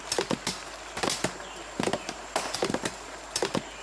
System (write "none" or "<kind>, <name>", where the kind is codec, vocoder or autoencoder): none